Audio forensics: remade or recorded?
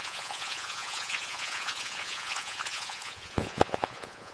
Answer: remade